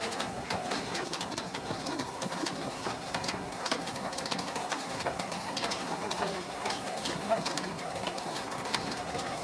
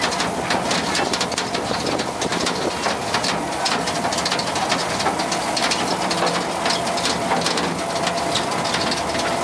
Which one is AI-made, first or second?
first